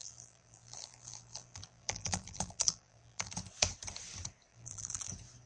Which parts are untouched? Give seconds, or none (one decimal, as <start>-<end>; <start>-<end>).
3.3-4.5; 5.1-5.5